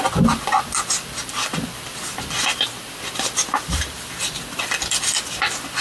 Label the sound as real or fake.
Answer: real